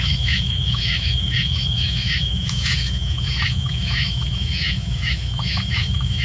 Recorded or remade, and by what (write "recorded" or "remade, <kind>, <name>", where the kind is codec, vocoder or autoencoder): remade, autoencoder, DAC-VAE